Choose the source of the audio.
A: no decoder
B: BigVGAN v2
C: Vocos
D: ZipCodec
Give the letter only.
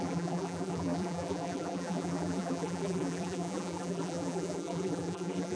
B